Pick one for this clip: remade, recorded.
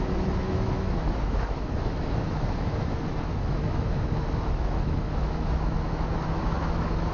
remade